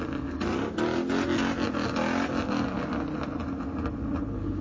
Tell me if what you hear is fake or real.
real